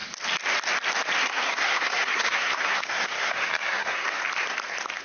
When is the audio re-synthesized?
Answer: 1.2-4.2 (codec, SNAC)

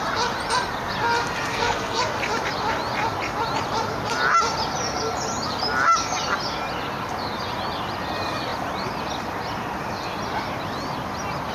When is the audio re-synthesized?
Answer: 1.5-2.0 (codec, SNAC)

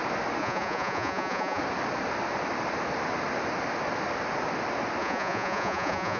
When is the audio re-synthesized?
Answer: 0.4-1.6 (vocoder, Vocos); 5.0-6.2

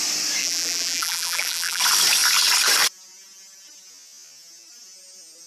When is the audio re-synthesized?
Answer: 0.4-1.8 (vocoder, BigVGAN v2)

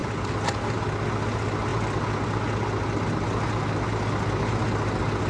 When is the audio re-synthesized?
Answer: 0.0-0.8 (vocoder, BigVGAN v2)